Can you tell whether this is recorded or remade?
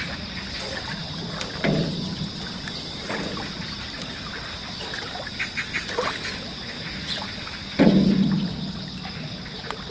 recorded